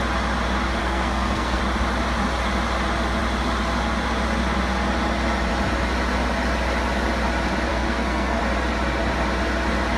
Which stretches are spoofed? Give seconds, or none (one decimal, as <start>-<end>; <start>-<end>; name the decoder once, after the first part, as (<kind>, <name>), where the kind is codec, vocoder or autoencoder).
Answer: 0.8-1.6 (codec, SNAC); 7.7-8.4